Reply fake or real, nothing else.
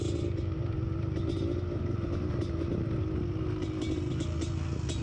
real